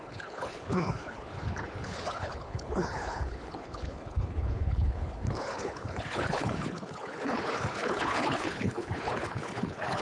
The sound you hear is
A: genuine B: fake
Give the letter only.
B